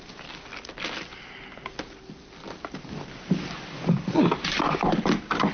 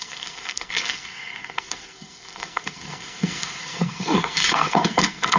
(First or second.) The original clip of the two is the first